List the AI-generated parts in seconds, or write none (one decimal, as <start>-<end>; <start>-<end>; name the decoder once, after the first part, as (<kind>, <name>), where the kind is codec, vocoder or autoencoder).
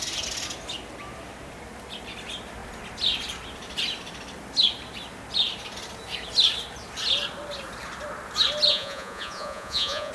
8.7-10.1 (vocoder, Vocos)